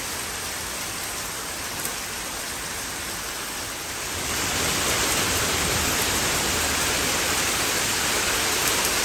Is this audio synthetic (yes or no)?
yes